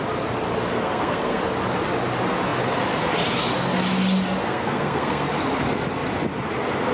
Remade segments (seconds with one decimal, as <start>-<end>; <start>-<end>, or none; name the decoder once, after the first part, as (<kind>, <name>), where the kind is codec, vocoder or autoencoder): 0.7-1.4 (codec, SNAC); 4.4-5.3